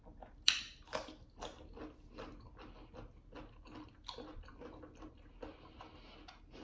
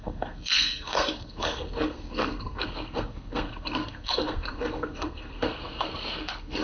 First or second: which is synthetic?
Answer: second